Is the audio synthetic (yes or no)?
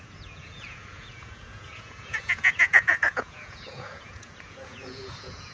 yes